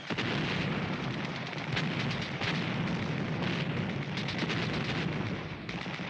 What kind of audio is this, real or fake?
real